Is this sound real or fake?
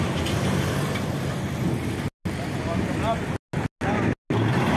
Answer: real